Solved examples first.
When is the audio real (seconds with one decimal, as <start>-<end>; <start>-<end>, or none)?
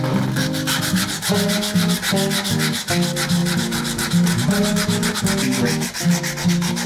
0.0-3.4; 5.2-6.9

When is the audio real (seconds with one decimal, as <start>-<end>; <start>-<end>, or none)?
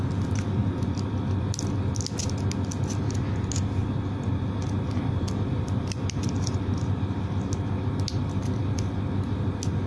0.0-9.9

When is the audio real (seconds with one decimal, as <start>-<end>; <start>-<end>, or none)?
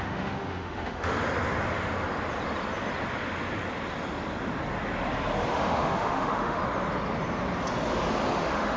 1.1-5.5; 6.6-8.4